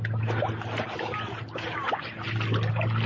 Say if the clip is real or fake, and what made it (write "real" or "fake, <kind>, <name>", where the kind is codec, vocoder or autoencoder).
real